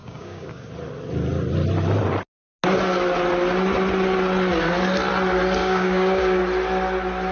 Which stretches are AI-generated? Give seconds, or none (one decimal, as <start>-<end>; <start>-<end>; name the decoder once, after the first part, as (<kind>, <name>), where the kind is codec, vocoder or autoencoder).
0.0-0.7 (codec, DAC); 5.6-6.4